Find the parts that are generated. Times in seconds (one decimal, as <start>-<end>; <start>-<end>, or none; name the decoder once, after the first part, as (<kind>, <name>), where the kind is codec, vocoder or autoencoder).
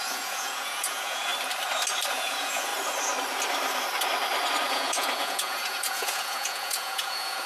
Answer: 0.0-1.3 (vocoder, Vocos); 2.1-2.7; 4.7-7.5